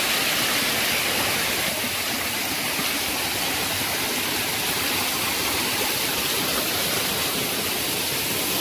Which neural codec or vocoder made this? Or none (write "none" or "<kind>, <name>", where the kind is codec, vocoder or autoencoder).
none